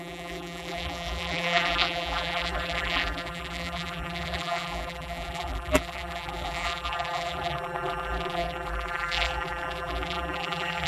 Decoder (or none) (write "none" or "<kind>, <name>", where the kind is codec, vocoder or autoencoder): vocoder, BigVGAN v2